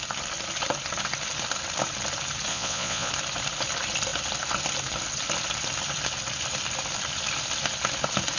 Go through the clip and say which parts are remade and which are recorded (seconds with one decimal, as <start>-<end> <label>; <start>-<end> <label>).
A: 0.0-2.5 recorded; 2.5-3.1 remade; 3.1-8.4 recorded